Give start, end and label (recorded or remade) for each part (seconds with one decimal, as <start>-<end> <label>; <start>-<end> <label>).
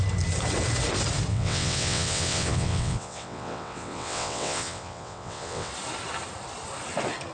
0.0-1.3 recorded; 1.3-5.7 remade; 5.7-7.3 recorded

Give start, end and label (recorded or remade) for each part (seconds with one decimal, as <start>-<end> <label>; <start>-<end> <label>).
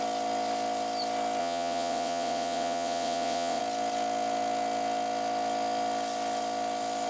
0.0-1.4 recorded; 1.4-3.6 remade; 3.6-7.1 recorded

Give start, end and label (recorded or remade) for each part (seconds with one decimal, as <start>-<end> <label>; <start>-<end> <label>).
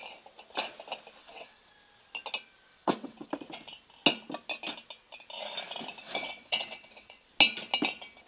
0.0-1.2 recorded; 1.2-1.7 remade; 1.7-2.7 recorded; 2.7-3.3 remade; 3.3-6.0 recorded; 6.0-7.3 remade; 7.3-8.3 recorded